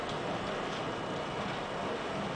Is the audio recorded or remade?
recorded